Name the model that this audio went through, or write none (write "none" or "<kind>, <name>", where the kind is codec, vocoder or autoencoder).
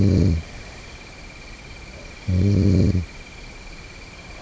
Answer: none